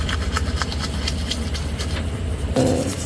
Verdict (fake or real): fake